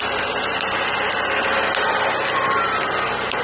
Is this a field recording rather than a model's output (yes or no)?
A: yes